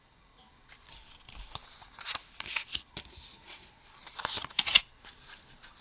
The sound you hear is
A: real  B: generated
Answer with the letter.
A